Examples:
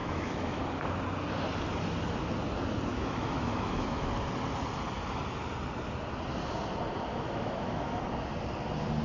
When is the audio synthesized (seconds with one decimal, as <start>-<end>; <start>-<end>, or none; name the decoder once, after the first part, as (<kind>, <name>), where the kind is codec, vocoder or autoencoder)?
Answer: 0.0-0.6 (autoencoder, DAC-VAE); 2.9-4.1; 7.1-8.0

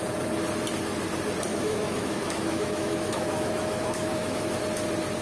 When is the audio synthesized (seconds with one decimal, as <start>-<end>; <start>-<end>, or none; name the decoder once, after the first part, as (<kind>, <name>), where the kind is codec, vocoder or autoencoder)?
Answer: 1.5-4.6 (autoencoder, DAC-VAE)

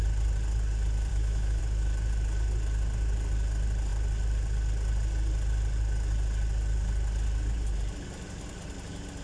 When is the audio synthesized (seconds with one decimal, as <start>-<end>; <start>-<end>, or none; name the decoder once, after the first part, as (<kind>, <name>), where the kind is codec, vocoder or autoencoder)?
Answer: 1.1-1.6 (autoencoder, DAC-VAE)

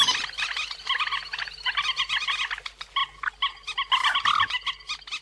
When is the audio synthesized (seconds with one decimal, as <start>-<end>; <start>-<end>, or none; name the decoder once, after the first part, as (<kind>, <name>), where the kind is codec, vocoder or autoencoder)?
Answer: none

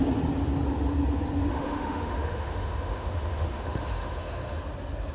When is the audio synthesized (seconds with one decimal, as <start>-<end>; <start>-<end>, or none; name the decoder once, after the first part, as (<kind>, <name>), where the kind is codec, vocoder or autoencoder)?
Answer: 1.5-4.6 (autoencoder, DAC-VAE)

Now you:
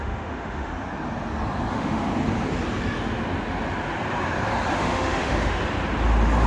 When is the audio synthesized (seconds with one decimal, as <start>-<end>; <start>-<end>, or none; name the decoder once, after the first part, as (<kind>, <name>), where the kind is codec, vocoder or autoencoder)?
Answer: 0.0-0.7 (autoencoder, DAC-VAE); 1.7-2.1; 4.7-5.6

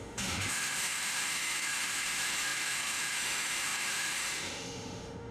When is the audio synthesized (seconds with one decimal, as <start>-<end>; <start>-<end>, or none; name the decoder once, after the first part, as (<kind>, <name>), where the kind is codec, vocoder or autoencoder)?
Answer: 0.0-5.3 (autoencoder, DAC-VAE)

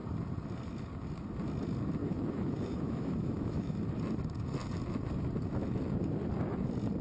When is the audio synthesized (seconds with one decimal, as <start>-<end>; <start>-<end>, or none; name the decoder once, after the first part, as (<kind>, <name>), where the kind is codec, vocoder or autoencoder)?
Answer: 2.0-3.8 (autoencoder, DAC-VAE)